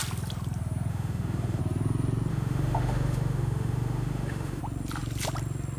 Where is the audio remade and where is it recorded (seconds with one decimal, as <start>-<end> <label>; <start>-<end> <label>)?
0.0-0.9 recorded; 0.9-1.6 remade; 1.6-2.3 recorded; 2.3-4.6 remade; 4.6-5.8 recorded